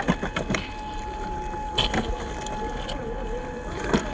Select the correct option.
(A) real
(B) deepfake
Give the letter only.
A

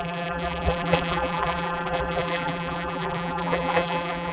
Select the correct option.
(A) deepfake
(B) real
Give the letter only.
A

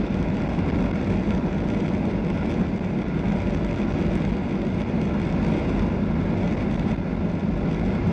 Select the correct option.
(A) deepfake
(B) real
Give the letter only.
B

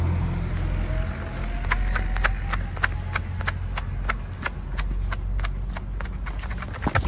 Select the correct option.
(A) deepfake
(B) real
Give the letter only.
B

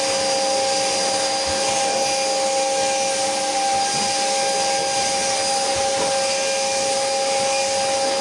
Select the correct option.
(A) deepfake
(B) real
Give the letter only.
B